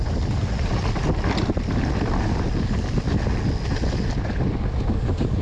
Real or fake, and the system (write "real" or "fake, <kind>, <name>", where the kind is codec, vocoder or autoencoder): real